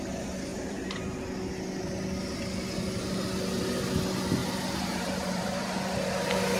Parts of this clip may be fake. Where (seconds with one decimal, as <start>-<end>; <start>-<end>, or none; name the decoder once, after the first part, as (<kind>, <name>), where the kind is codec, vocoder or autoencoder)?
0.5-1.0 (vocoder, BigVGAN v2); 4.4-5.7